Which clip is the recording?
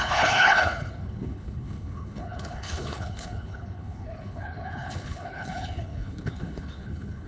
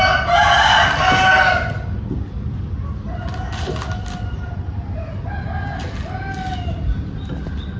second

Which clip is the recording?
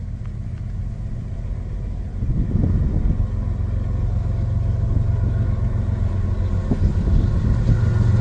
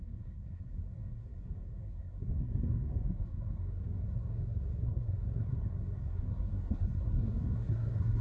first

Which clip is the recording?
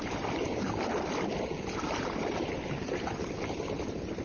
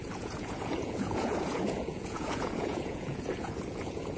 first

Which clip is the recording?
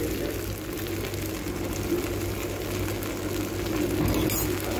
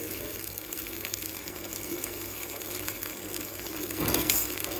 first